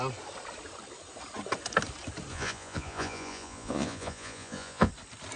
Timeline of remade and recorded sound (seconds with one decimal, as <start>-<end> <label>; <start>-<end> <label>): 0.0-2.3 recorded; 2.3-4.9 remade; 4.9-5.4 recorded